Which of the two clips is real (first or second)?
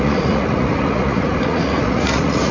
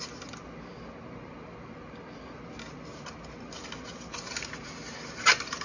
second